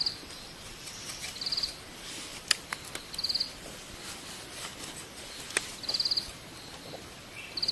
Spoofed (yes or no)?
no